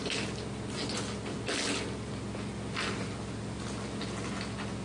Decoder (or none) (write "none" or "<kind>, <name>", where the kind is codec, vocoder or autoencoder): none